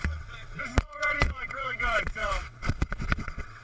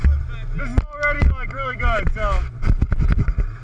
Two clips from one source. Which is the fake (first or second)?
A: first